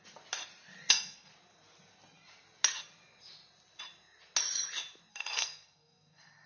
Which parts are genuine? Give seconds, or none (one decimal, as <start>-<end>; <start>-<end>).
0.0-0.9; 1.3-5.1